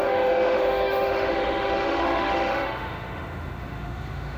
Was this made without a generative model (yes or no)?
no